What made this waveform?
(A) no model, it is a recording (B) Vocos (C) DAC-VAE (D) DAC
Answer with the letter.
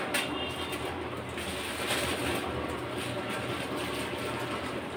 A